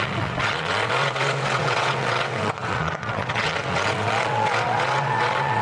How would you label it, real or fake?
fake